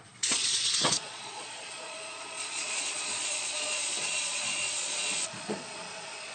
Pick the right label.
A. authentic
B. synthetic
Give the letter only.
B